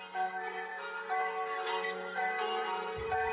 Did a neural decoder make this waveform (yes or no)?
yes